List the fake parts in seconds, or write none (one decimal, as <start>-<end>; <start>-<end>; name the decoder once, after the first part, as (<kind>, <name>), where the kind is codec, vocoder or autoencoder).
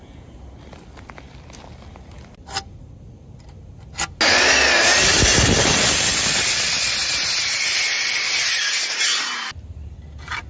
7.0-7.6 (vocoder, BigVGAN v2); 8.4-9.9